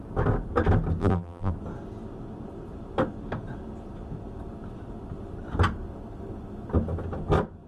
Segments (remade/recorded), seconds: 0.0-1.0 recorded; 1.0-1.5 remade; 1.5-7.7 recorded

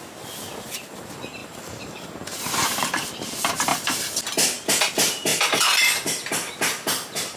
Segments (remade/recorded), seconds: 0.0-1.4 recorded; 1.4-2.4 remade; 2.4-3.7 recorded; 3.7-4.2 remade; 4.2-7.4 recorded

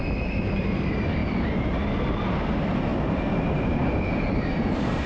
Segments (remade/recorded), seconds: 0.0-1.2 remade; 1.2-2.2 recorded; 2.2-5.1 remade

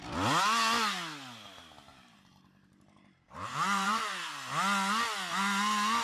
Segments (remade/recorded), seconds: 0.0-1.9 recorded; 1.9-4.3 remade; 4.3-6.0 recorded

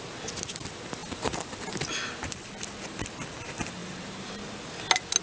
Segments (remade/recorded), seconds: 0.0-3.8 recorded; 3.8-4.4 remade; 4.4-5.2 recorded